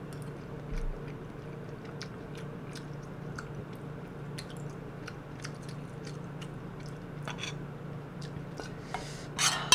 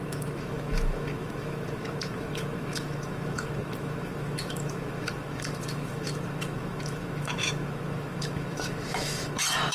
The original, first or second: first